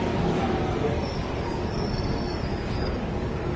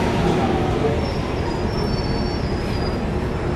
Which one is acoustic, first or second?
second